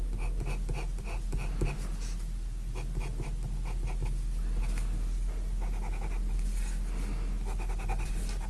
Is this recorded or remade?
recorded